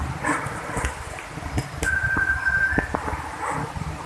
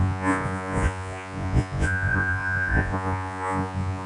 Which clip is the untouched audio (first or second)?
first